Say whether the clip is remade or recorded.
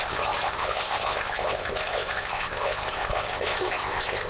remade